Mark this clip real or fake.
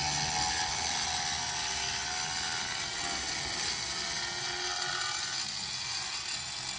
real